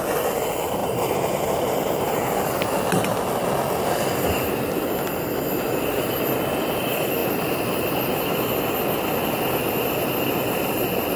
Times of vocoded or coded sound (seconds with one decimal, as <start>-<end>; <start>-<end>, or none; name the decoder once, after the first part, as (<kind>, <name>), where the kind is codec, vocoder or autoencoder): 0.8-2.2 (vocoder, BigVGAN v2)